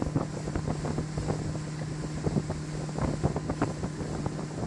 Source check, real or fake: real